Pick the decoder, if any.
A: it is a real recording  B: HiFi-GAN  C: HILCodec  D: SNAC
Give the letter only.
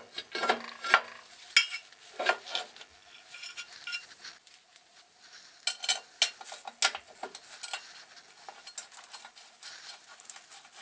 A